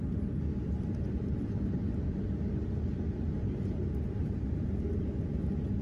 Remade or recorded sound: recorded